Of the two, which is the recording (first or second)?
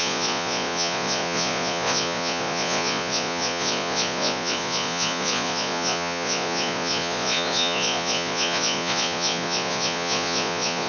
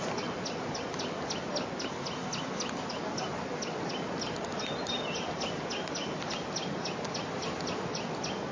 second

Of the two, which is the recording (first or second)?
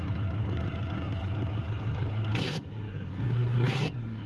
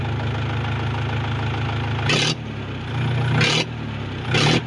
second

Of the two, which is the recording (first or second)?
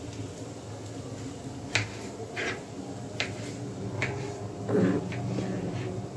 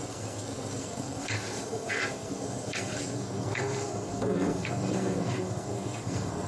first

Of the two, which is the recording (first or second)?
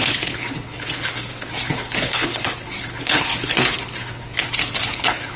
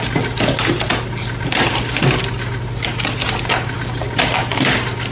second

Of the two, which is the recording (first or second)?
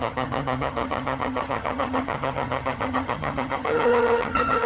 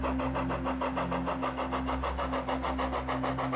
second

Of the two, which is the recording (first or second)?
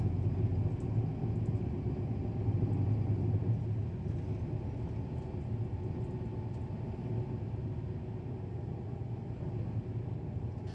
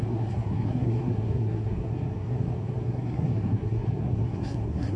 first